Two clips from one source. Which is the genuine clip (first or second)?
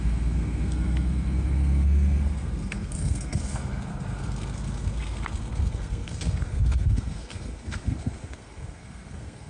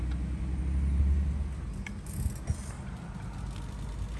second